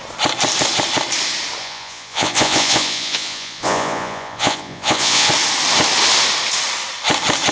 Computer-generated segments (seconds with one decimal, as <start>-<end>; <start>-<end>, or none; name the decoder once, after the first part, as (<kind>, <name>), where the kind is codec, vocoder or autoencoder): 1.6-5.3 (vocoder, Vocos)